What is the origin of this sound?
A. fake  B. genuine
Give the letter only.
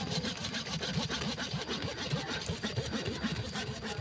B